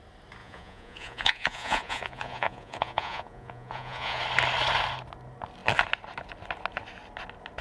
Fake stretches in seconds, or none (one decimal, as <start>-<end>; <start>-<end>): 0.4-4.2